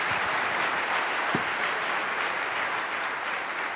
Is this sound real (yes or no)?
yes